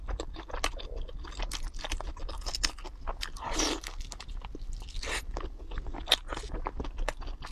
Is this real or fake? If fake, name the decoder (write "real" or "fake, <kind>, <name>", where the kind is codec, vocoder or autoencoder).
real